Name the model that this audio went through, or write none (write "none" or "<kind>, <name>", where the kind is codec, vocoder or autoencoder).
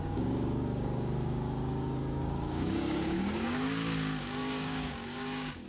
codec, DAC